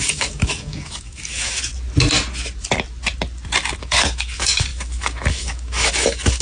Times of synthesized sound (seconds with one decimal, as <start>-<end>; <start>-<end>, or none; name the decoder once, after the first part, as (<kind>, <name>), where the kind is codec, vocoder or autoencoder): 0.0-1.7 (codec, DAC); 3.8-6.4